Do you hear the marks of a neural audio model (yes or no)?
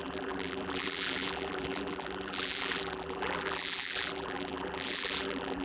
yes